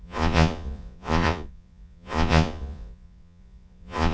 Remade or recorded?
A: remade